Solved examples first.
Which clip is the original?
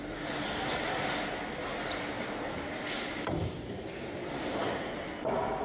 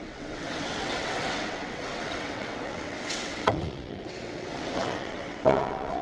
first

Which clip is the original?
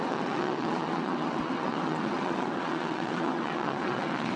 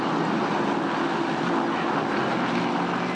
second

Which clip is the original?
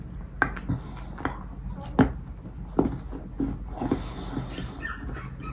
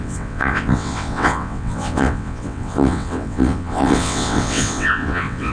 first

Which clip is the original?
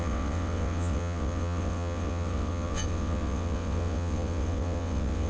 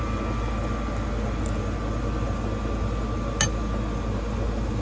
second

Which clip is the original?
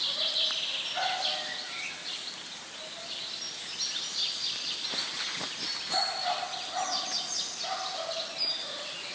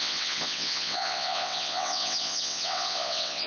first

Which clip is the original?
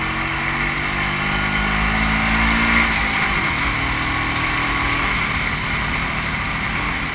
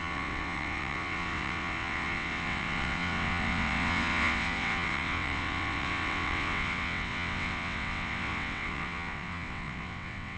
first